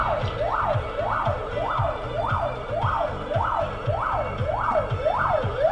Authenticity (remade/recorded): recorded